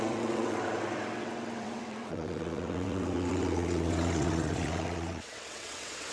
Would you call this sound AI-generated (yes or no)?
yes